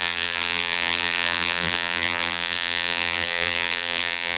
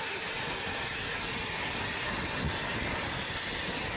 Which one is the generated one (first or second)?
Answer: first